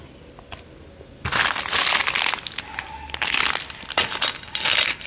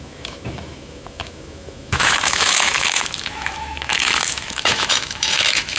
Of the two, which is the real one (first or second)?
first